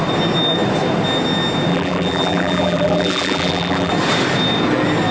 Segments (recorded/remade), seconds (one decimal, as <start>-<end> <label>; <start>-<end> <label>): 0.0-1.7 recorded; 1.7-3.9 remade; 3.9-5.1 recorded